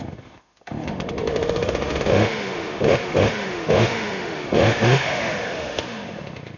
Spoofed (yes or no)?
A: yes